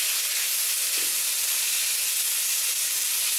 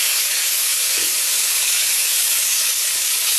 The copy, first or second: second